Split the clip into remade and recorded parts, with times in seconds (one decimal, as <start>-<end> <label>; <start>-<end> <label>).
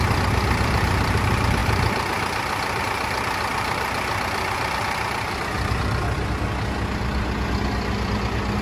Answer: 0.0-8.6 recorded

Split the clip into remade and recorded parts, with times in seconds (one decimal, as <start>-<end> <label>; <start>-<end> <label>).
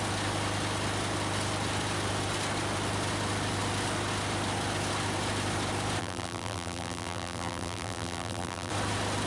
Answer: 0.0-6.0 recorded; 6.0-8.7 remade; 8.7-9.3 recorded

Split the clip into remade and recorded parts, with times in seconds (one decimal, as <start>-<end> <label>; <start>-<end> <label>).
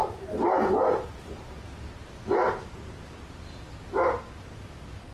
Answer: 0.0-3.1 remade; 3.1-5.1 recorded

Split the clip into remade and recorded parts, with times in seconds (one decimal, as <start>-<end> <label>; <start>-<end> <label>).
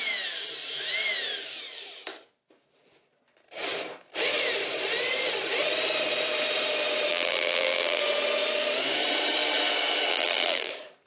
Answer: 0.0-7.1 recorded; 7.1-8.0 remade; 8.0-10.1 recorded; 10.1-10.7 remade; 10.7-11.1 recorded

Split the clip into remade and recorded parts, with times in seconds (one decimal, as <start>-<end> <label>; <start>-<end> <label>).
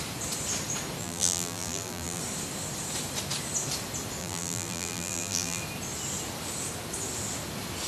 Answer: 0.0-1.0 recorded; 1.0-2.2 remade; 2.2-4.2 recorded; 4.2-5.6 remade; 5.6-7.9 recorded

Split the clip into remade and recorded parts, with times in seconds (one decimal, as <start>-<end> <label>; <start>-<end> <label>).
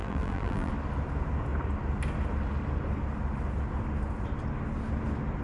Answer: 0.0-0.7 remade; 0.7-5.4 recorded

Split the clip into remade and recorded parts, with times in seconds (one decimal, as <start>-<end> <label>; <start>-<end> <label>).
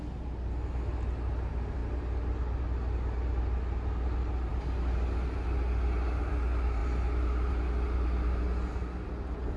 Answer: 0.0-9.6 recorded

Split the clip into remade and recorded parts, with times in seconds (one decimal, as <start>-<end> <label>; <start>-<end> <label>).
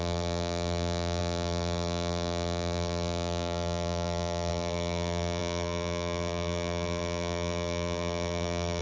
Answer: 0.0-8.8 remade